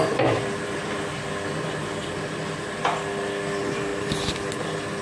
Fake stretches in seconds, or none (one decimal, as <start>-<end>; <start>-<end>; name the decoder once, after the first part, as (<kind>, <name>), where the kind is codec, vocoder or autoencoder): none